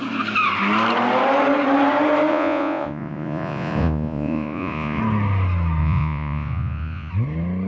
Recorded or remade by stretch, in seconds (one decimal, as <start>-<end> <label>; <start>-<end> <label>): 0.0-2.3 recorded; 2.3-5.0 remade; 5.0-5.8 recorded; 5.8-7.1 remade; 7.1-7.7 recorded